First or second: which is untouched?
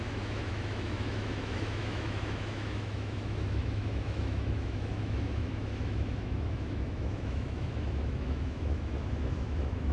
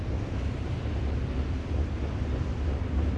second